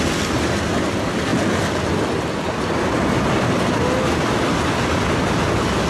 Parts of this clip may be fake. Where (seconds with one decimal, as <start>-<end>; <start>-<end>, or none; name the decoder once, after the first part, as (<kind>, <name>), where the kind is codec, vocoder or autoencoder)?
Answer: none